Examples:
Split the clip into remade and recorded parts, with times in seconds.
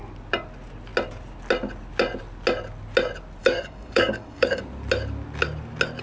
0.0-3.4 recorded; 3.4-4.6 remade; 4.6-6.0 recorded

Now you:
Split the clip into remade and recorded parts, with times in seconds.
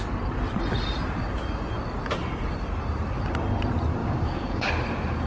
0.0-4.0 recorded; 4.0-4.7 remade; 4.7-5.3 recorded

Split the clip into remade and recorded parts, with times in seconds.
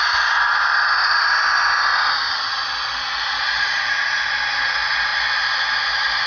0.0-6.3 recorded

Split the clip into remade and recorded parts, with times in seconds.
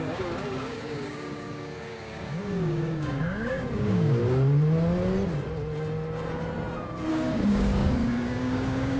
0.0-4.2 remade; 4.2-7.1 recorded; 7.1-9.0 remade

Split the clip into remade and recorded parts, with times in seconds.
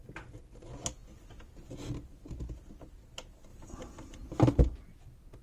0.0-5.4 recorded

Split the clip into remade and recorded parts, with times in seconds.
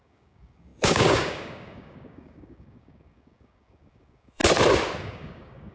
0.0-4.4 remade; 4.4-5.0 recorded; 5.0-5.7 remade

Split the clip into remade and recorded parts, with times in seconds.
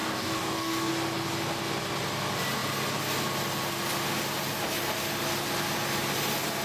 0.0-0.9 remade; 0.9-6.6 recorded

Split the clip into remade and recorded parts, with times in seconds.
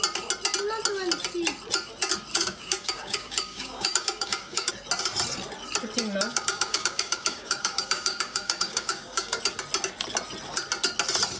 0.0-2.3 recorded; 2.3-4.7 remade; 4.7-6.3 recorded; 6.3-9.4 remade; 9.4-11.4 recorded